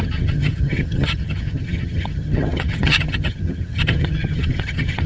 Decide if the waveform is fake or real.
fake